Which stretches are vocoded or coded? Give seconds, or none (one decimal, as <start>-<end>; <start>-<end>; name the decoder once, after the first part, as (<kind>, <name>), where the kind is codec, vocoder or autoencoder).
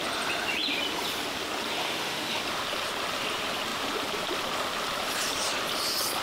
1.8-2.4 (autoencoder, DAC-VAE)